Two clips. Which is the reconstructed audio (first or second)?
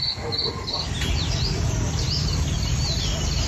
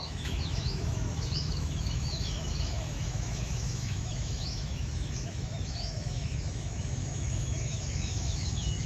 second